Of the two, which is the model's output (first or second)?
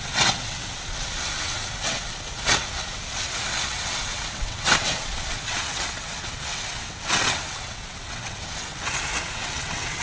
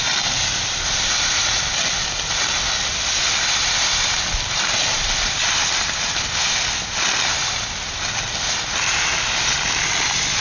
first